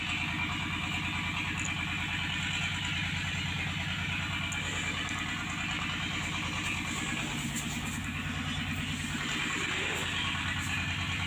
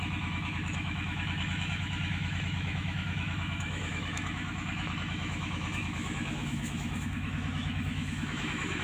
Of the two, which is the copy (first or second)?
second